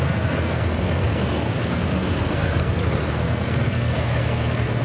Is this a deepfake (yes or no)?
yes